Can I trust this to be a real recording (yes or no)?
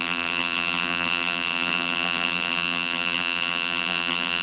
no